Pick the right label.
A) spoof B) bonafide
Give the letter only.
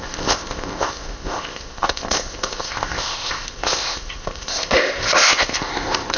A